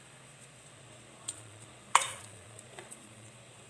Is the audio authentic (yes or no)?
no